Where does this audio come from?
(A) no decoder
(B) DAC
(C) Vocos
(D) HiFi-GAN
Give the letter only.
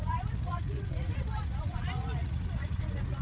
C